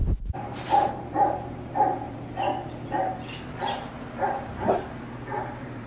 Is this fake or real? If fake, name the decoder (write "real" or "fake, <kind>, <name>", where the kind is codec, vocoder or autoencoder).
fake, vocoder, BigVGAN v2